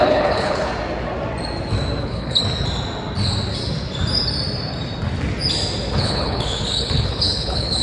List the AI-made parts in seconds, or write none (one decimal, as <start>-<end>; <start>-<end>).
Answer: 0.0-0.7; 2.0-2.4; 5.9-7.8